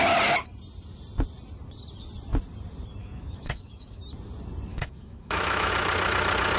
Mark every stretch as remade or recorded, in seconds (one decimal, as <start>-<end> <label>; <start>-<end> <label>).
0.0-3.0 recorded; 3.0-4.0 remade; 4.0-4.7 recorded; 4.7-5.7 remade; 5.7-6.6 recorded